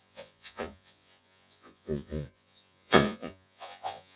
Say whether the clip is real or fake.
fake